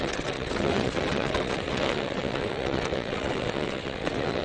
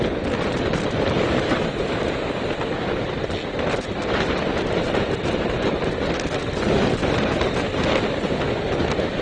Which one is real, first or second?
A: second